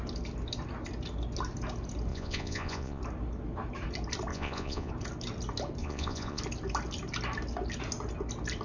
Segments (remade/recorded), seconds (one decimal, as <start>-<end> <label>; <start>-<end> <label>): 0.0-2.1 recorded; 2.1-3.0 remade; 3.0-4.3 recorded; 4.3-4.9 remade; 4.9-5.8 recorded; 5.8-6.4 remade; 6.4-8.6 recorded